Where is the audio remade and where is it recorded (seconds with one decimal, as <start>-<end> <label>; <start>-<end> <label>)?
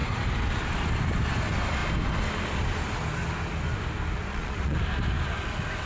0.0-4.3 recorded; 4.3-4.8 remade; 4.8-5.9 recorded